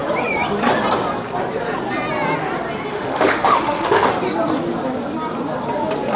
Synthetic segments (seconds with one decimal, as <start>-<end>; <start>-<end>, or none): 2.9-4.1